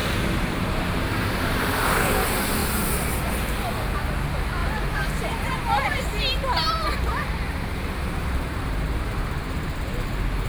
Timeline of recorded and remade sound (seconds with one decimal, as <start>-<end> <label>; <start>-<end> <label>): 0.0-2.1 remade; 2.1-4.6 recorded; 4.6-6.0 remade; 6.0-7.7 recorded; 7.7-9.8 remade; 9.8-10.5 recorded